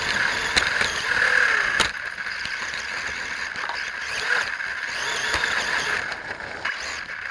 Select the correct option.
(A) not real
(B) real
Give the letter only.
B